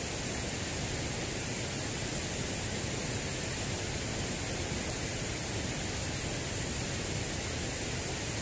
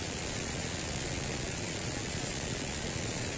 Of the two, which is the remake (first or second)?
second